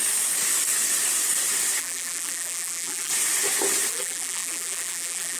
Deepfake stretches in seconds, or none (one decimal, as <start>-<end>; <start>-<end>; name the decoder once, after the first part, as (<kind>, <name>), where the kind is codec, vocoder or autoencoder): 1.8-3.1 (vocoder, BigVGAN v2); 3.9-5.4